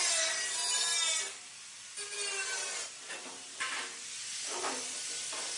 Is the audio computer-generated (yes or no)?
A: no